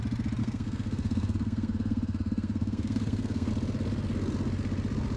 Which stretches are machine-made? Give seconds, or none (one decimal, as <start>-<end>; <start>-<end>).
0.4-3.5